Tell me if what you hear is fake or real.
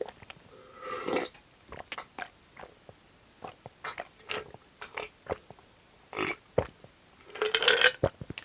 real